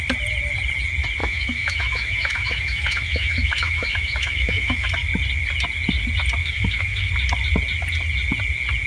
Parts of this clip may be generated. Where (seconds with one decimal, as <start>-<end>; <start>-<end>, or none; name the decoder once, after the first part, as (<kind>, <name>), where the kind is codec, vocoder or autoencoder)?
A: 1.2-4.9 (autoencoder, DAC-VAE); 6.4-7.1